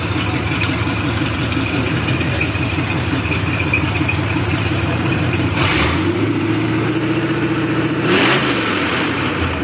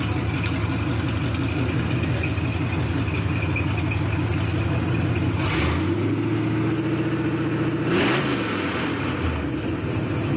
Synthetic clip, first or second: first